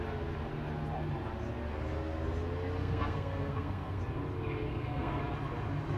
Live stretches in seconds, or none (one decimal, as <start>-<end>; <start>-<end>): 0.0-2.8; 4.0-4.7; 5.2-6.0